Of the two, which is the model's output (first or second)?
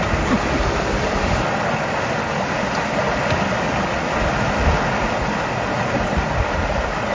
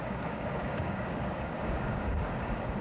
second